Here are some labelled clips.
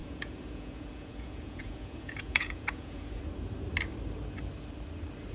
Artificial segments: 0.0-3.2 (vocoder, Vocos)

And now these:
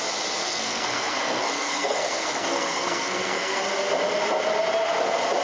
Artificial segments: 0.4-3.6 (codec, SNAC)

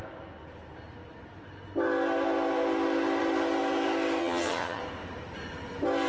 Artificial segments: 4.2-4.8 (vocoder, HiFi-GAN)

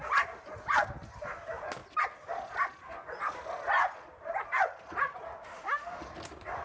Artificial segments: 5.4-6.0 (autoencoder, DAC-VAE)

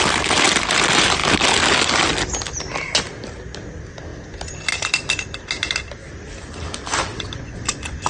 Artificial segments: 7.1-8.1 (vocoder, Vocos)

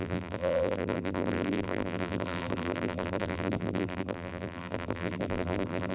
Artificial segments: 0.0-5.9 (vocoder, BigVGAN v2)